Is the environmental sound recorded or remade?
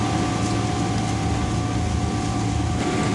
recorded